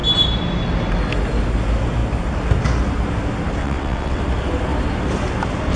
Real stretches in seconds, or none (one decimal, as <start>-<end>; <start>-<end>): 0.0-3.6; 4.2-5.8